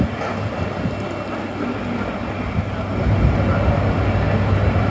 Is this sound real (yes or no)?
yes